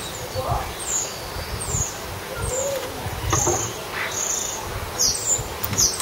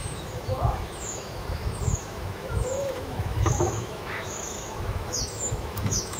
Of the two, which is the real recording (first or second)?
first